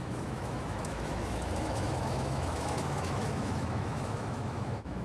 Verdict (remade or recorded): remade